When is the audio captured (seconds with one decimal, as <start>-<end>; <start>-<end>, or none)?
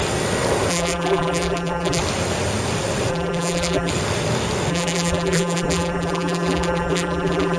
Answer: 0.0-0.7; 2.0-3.1; 3.9-4.7